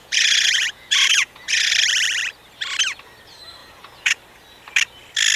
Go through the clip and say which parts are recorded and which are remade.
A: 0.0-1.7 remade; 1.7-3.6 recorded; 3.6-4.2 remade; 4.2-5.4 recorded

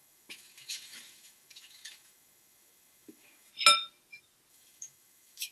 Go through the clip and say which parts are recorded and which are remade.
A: 0.0-3.5 remade; 3.5-4.5 recorded; 4.5-5.5 remade

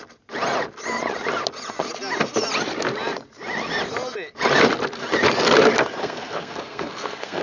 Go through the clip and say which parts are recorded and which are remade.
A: 0.0-6.0 recorded; 6.0-7.4 remade